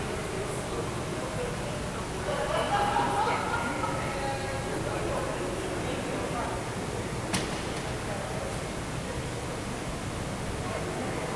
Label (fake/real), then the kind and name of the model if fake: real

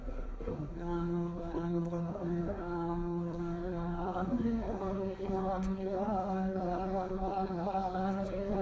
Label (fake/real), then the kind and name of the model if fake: fake, codec, SNAC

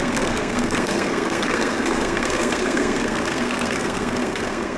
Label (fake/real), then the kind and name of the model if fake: fake, codec, SNAC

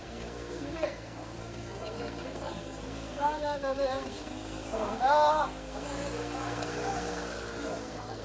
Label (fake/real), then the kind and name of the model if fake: fake, codec, SNAC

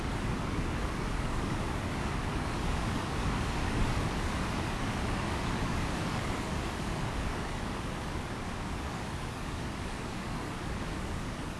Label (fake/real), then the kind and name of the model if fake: fake, codec, DAC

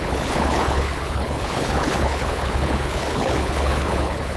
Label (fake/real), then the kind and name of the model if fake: fake, codec, HILCodec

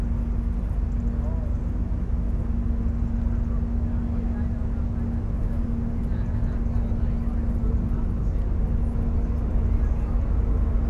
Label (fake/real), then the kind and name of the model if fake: real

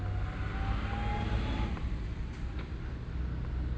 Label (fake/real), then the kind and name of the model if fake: real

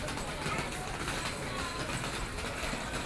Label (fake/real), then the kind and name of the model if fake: real